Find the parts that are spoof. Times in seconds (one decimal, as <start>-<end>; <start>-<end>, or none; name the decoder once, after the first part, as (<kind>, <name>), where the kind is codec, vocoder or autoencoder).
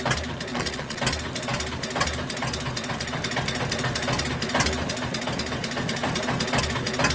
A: 0.5-1.0 (vocoder, Vocos)